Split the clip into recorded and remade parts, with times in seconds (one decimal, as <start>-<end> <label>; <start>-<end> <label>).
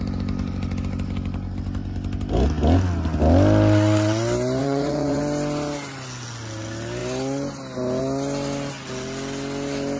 0.0-4.6 recorded; 4.6-5.2 remade; 5.2-10.0 recorded